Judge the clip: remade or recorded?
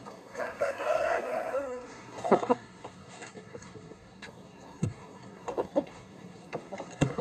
remade